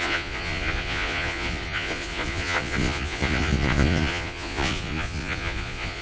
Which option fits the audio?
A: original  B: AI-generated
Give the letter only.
B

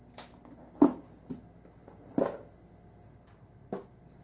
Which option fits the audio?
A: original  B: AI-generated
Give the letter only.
A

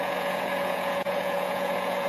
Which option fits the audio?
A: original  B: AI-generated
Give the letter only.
B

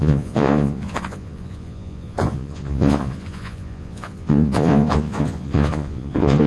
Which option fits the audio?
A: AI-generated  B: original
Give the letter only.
A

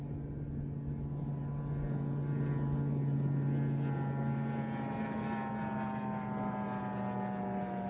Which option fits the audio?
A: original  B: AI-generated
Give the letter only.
A